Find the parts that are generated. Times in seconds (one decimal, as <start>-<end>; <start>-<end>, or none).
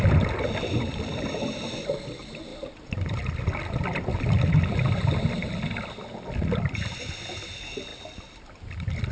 5.4-6.0